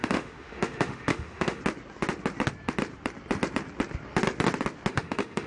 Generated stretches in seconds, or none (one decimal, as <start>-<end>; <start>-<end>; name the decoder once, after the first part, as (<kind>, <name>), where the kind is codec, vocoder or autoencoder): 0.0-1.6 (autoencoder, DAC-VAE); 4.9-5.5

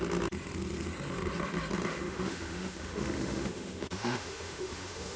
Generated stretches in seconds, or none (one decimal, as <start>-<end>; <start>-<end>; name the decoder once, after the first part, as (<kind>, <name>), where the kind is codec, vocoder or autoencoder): 1.9-5.2 (autoencoder, DAC-VAE)

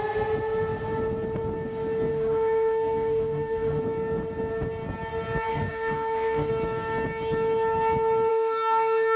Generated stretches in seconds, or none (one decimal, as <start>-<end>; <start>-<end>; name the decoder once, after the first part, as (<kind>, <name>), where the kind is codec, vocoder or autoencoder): 2.1-3.8 (autoencoder, DAC-VAE); 5.5-6.5; 8.3-9.2

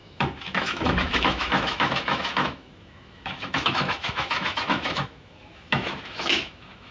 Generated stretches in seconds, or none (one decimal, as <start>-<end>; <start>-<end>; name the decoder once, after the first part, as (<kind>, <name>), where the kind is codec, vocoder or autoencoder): 0.0-6.9 (autoencoder, DAC-VAE)

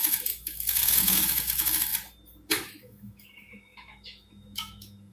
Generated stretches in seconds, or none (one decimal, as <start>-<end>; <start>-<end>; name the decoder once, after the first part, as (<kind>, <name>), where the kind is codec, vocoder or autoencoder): 0.0-1.9 (autoencoder, DAC-VAE); 2.5-5.1